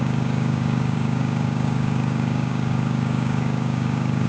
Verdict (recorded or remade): remade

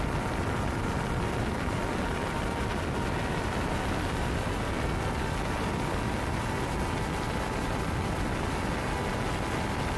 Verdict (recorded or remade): recorded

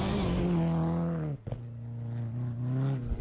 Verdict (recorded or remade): recorded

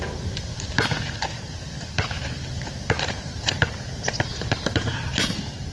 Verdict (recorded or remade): remade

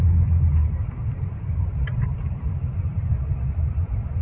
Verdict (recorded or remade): recorded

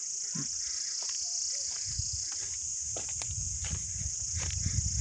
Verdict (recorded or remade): recorded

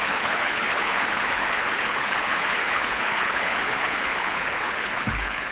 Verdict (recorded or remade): remade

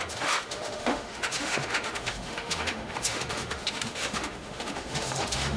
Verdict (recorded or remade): remade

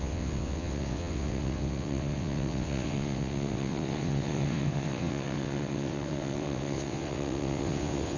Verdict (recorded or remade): remade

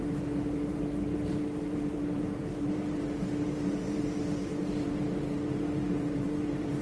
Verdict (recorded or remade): remade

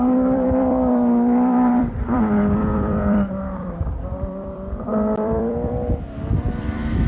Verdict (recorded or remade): remade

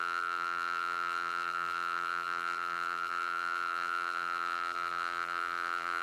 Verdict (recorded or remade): remade